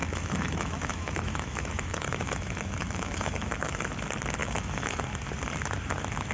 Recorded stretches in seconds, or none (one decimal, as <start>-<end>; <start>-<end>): 3.8-4.4; 5.0-6.3